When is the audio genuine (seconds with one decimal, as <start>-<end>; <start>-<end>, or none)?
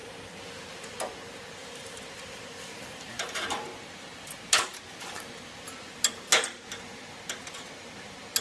1.0-1.6; 6.6-8.4